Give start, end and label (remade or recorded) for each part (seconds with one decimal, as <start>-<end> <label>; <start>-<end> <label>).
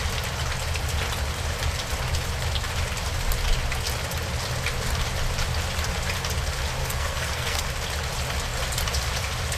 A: 0.0-6.8 recorded; 6.8-7.6 remade; 7.6-9.6 recorded